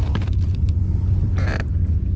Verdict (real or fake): real